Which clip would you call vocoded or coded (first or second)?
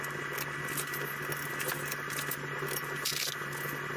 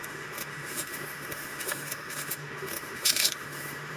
second